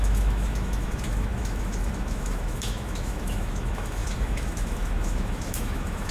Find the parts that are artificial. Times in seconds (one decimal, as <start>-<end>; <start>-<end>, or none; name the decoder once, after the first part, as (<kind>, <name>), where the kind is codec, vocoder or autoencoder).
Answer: 0.0-6.1 (autoencoder, DAC-VAE)